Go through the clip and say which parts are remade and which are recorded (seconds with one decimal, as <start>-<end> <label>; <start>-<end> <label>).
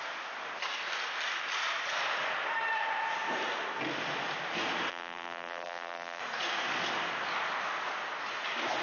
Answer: 0.0-4.9 recorded; 4.9-6.2 remade; 6.2-8.8 recorded